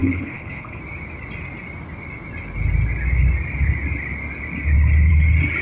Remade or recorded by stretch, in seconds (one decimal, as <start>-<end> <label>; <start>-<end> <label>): 0.0-0.8 remade; 0.8-5.6 recorded